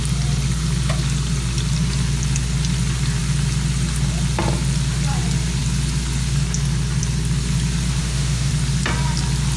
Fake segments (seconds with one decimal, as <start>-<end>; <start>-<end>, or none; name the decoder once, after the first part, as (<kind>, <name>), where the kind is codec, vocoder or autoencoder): 8.0-8.5 (autoencoder, DAC-VAE)